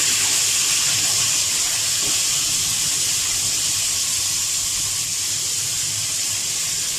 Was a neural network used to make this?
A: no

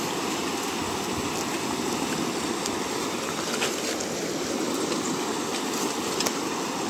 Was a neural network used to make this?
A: no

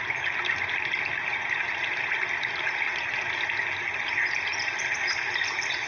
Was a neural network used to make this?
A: no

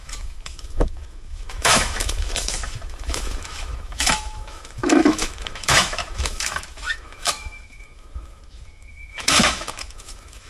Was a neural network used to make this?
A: yes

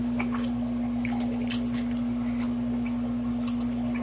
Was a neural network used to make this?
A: no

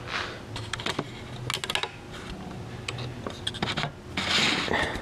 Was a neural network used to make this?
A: no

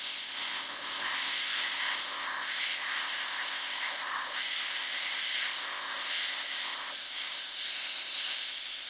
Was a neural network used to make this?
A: yes